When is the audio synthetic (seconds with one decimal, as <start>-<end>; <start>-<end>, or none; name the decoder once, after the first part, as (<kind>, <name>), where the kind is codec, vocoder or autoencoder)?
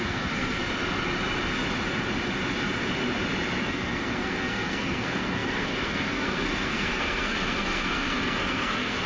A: 0.0-0.6 (codec, SNAC); 3.6-9.1